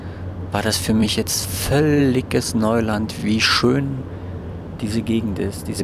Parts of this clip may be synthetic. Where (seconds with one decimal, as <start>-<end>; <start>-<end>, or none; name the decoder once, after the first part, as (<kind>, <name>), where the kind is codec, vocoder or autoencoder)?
1.0-2.0 (vocoder, BigVGAN v2)